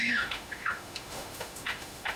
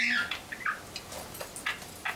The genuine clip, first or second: second